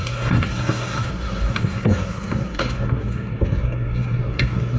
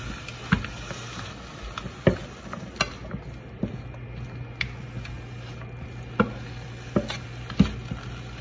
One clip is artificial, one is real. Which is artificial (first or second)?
first